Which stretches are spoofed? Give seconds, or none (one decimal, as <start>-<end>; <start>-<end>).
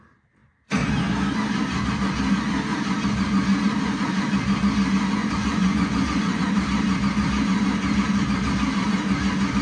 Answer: 5.2-6.4